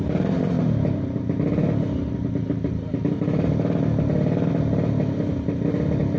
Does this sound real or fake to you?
real